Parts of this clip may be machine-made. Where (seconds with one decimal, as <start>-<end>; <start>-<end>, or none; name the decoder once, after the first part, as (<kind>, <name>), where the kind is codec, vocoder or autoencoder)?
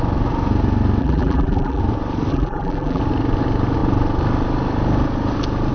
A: 1.0-1.8 (vocoder, BigVGAN v2); 2.3-3.0